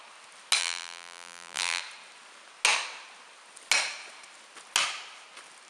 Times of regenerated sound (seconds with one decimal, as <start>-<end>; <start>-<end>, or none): 0.6-1.8